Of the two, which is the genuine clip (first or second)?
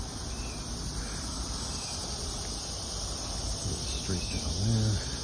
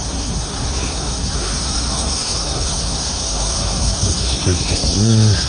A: first